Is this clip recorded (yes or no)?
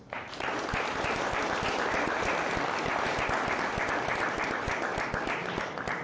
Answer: no